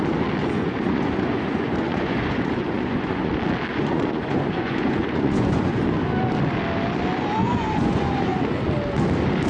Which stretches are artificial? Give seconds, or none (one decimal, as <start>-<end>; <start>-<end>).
0.4-3.3; 3.7-5.8; 7.4-8.4